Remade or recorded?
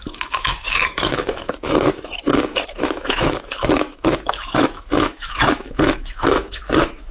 remade